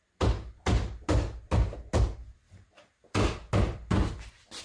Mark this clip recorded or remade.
recorded